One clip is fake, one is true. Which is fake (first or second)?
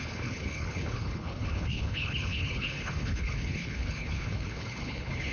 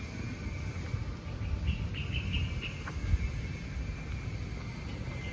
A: first